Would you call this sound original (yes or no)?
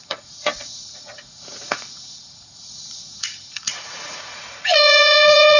no